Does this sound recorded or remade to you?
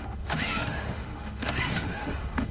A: remade